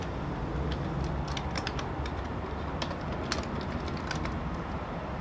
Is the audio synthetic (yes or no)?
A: no